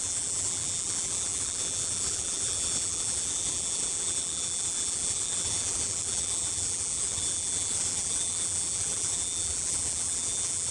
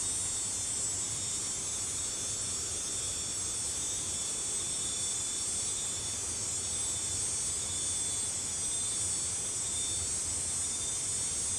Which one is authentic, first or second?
second